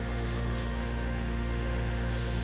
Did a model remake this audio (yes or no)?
yes